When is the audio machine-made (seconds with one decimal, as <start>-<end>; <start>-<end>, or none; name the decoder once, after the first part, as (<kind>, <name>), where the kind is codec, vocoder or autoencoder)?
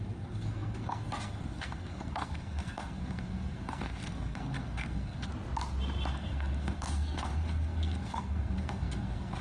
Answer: 0.0-5.3 (codec, SNAC); 6.1-9.4